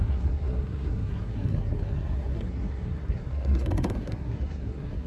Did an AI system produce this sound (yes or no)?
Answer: yes